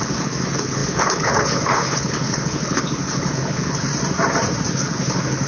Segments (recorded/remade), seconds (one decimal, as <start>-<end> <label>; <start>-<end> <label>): 0.0-3.9 remade; 3.9-4.7 recorded; 4.7-5.5 remade